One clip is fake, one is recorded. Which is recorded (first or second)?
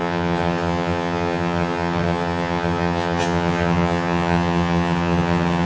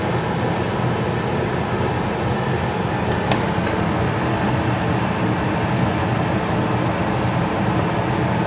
second